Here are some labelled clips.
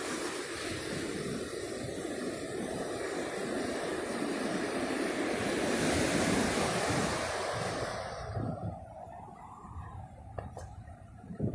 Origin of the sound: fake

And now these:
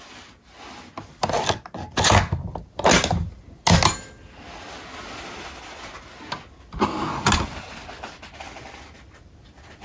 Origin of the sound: real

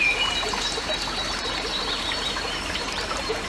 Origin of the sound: fake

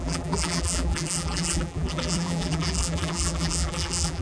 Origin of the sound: fake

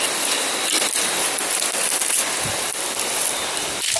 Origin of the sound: real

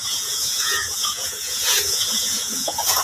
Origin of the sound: fake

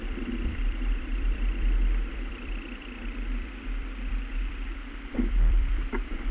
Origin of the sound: fake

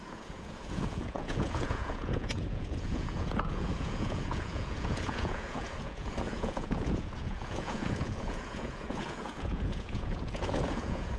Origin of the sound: fake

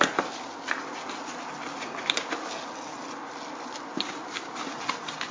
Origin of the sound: real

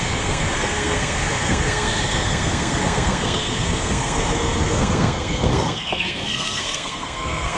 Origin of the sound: fake